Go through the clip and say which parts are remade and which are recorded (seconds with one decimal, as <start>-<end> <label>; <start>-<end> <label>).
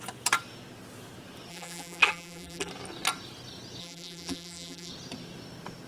0.0-1.5 recorded; 1.5-2.7 remade; 2.7-3.8 recorded; 3.8-4.9 remade; 4.9-5.9 recorded